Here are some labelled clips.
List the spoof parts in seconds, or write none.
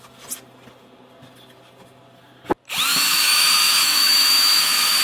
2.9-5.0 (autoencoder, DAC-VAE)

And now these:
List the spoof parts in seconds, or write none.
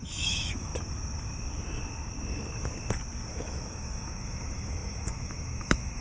0.0-0.7 (autoencoder, DAC-VAE); 3.3-6.0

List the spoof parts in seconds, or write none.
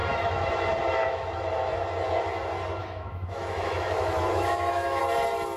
0.0-0.5 (autoencoder, DAC-VAE); 1.0-1.7; 2.8-5.0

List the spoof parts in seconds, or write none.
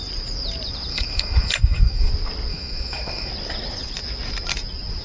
0.9-2.1 (autoencoder, DAC-VAE); 2.5-3.3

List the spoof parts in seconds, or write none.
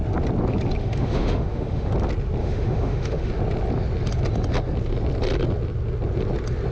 0.8-1.9 (autoencoder, DAC-VAE); 2.4-3.3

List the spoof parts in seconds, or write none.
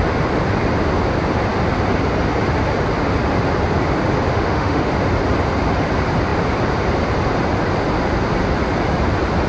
4.3-4.9 (autoencoder, DAC-VAE)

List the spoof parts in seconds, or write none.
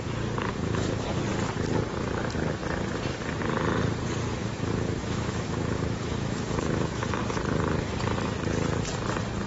0.5-1.1 (autoencoder, DAC-VAE); 4.4-7.2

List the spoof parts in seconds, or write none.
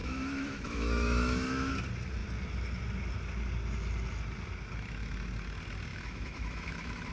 0.0-1.7 (autoencoder, DAC-VAE); 5.9-7.1